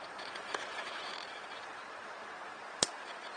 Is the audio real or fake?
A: fake